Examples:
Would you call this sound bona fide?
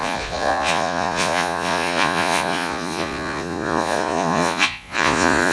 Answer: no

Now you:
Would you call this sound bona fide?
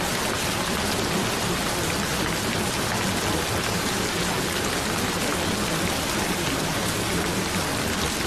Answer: yes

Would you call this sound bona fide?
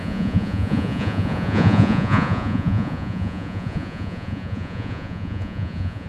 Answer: no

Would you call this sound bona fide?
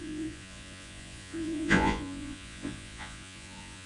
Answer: no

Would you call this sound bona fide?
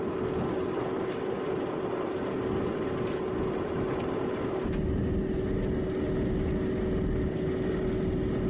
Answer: yes